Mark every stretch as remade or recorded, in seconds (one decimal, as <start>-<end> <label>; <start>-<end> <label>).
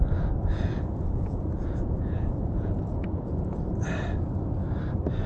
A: 0.0-0.4 recorded; 0.4-3.6 remade; 3.6-5.3 recorded